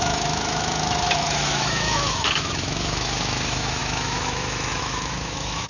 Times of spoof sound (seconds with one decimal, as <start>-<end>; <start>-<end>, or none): 0.0-5.7